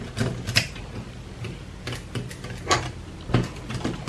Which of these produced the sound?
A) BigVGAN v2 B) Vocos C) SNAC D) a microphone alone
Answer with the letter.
D